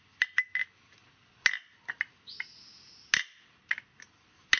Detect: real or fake real